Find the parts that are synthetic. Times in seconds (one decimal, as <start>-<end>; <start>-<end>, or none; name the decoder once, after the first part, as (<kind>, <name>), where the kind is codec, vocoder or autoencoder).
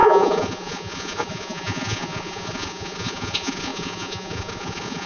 0.0-5.1 (vocoder, Vocos)